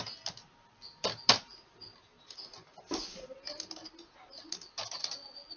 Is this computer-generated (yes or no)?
no